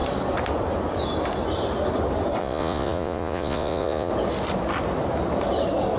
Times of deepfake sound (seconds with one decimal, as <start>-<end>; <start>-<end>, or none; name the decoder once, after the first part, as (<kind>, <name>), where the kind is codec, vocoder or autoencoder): 2.4-4.1 (vocoder, Vocos)